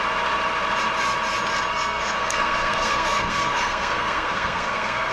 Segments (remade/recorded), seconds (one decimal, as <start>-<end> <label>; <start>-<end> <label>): 0.0-1.7 recorded; 1.7-5.1 remade